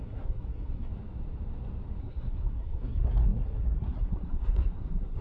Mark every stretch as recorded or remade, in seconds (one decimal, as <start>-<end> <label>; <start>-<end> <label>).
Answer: 0.0-0.9 remade; 0.9-2.0 recorded; 2.0-5.2 remade